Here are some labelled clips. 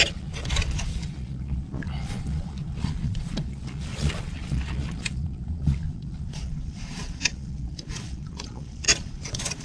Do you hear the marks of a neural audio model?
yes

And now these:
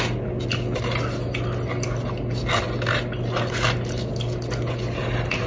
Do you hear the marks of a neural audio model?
no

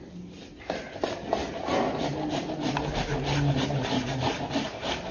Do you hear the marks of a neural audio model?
no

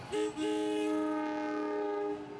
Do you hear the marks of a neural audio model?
no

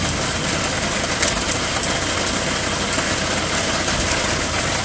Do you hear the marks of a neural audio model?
no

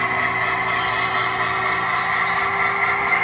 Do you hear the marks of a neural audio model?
no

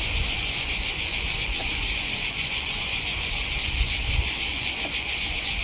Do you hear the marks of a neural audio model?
yes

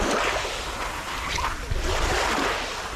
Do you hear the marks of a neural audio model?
no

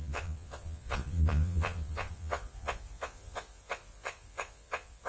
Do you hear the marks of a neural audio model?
yes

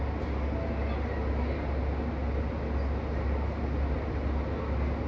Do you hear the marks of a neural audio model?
no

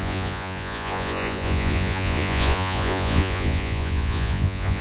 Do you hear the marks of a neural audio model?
yes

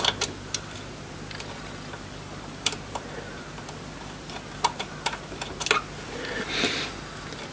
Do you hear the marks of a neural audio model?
no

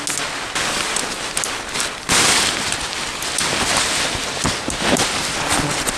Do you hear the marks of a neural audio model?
no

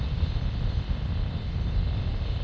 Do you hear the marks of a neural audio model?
no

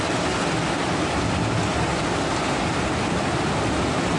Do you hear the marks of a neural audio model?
no